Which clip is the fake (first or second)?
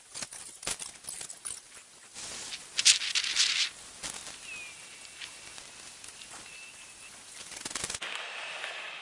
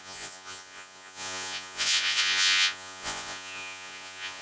second